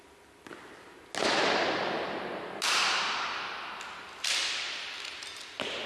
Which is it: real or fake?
real